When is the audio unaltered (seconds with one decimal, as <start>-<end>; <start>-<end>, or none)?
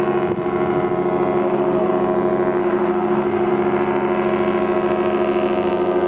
0.0-1.4; 1.9-2.6; 3.5-6.1